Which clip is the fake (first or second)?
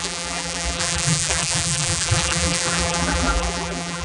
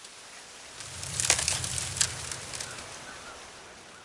first